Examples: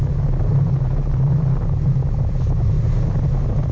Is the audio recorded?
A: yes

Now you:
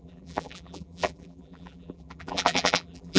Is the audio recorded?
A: no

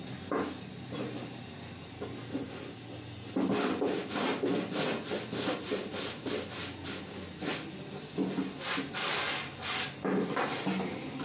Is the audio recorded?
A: yes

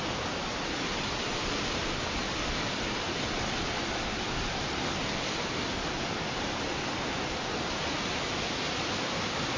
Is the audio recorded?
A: yes